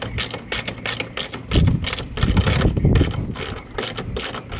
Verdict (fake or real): real